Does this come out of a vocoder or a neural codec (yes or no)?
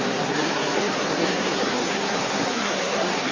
yes